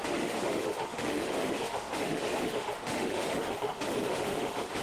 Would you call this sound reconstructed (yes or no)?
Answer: yes